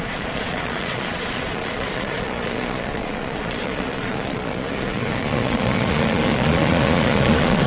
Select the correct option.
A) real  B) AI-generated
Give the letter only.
B